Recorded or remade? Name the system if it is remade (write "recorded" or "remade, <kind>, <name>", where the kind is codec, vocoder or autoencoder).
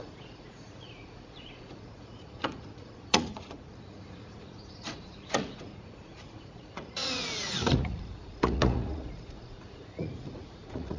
remade, vocoder, Vocos